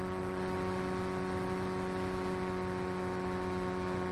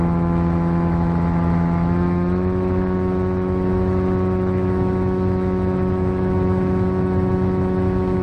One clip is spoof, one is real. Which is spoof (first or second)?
second